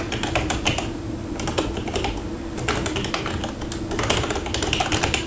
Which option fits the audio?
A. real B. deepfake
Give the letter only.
A